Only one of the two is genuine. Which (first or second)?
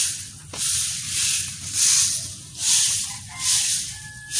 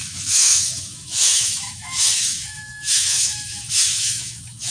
first